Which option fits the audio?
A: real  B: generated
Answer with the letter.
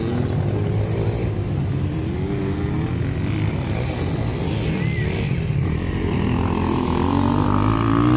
A